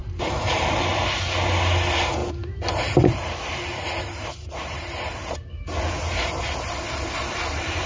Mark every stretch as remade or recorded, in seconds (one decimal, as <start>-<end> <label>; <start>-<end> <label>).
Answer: 0.0-0.7 remade; 0.7-2.2 recorded; 2.2-6.4 remade; 6.4-7.9 recorded